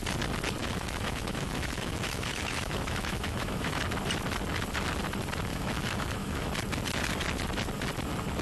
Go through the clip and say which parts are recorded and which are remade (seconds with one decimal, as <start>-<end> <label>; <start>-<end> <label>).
0.0-0.6 recorded; 0.6-3.8 remade; 3.8-5.5 recorded; 5.5-6.5 remade; 6.5-8.4 recorded